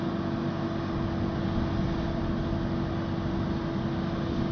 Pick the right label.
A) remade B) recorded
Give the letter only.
B